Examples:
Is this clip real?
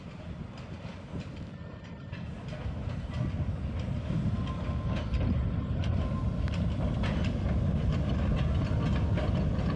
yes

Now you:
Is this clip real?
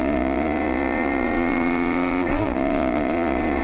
no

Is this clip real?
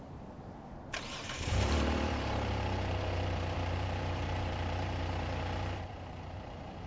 no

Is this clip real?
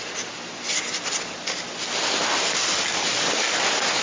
yes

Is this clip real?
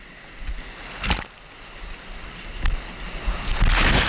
yes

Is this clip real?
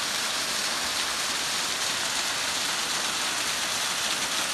yes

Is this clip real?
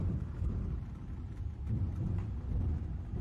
yes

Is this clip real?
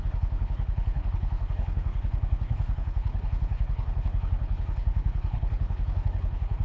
no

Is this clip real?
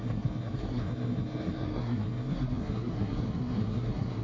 no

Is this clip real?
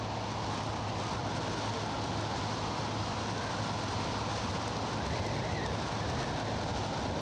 yes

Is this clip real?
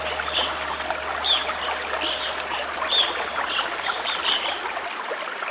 yes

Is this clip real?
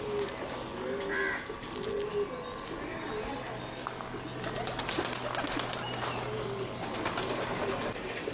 yes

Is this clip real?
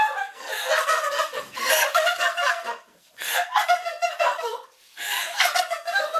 no